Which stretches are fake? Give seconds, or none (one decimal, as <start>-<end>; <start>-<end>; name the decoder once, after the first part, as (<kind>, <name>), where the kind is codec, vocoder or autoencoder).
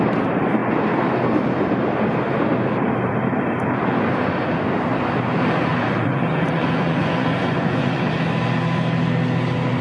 5.7-8.1 (vocoder, Vocos)